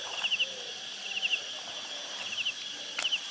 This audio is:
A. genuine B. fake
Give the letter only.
A